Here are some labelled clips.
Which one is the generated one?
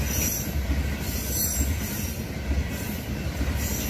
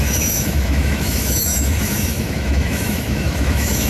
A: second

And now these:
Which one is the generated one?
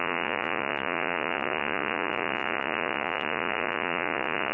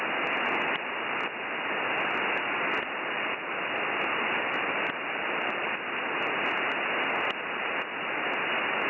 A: first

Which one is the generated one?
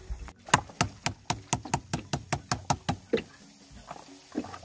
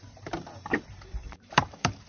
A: second